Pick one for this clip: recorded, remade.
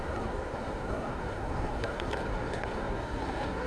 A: remade